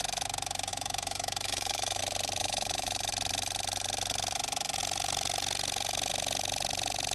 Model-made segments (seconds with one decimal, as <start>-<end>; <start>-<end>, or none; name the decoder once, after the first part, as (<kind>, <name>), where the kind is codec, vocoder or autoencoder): 0.7-2.0 (autoencoder, DAC-VAE); 2.4-3.1